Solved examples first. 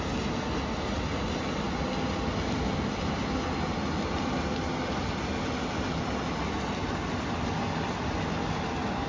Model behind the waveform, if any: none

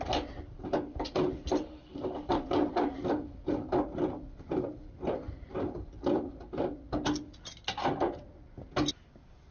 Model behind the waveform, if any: none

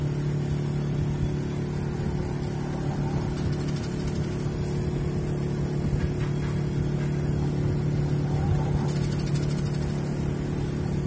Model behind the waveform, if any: none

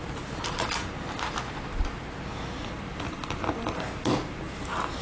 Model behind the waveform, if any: none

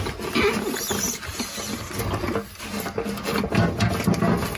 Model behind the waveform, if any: none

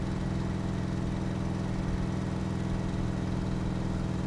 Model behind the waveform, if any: none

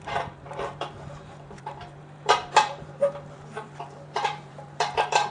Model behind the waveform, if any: vocoder, BigVGAN v2